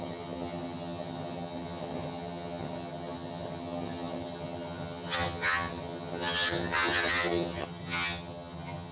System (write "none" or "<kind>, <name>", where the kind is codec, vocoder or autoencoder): vocoder, HiFi-GAN